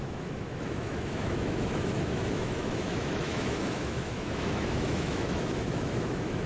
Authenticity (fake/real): fake